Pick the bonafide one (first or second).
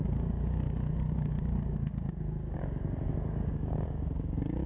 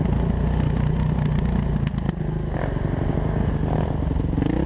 second